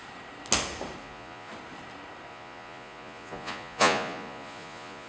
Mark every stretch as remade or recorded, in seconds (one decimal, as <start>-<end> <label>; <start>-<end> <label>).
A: 0.0-1.0 recorded; 1.0-1.5 remade; 1.5-2.3 recorded; 2.3-5.1 remade